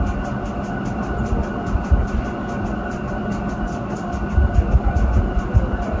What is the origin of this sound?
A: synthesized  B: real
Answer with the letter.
B